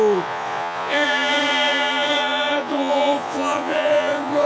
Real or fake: fake